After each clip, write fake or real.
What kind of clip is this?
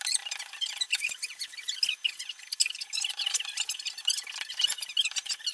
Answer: real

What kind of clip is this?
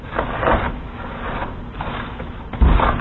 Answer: real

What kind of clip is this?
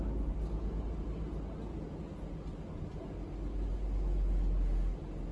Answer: real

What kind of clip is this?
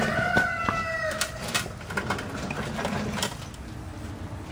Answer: real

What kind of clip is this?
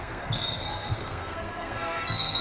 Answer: fake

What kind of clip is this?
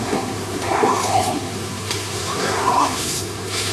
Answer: fake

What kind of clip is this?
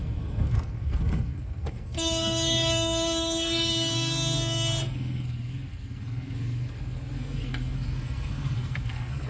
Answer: fake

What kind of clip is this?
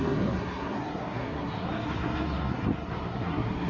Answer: fake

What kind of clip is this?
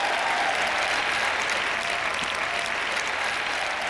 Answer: real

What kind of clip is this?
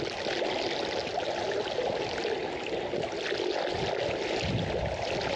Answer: real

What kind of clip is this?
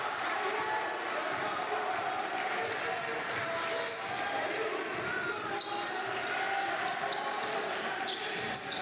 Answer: real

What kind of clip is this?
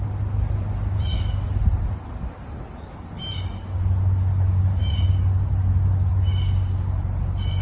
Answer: real